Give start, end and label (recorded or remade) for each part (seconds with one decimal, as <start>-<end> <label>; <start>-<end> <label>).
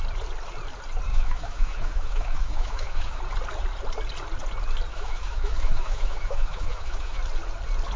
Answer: 0.0-1.1 recorded; 1.1-3.2 remade; 3.2-4.9 recorded; 4.9-7.2 remade; 7.2-8.0 recorded